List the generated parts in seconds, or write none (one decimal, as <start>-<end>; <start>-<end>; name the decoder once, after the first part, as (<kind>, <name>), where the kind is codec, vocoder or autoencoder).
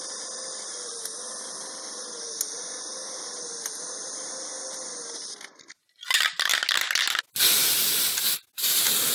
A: none